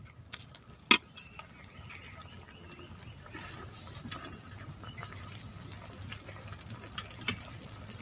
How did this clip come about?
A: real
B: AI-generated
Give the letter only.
A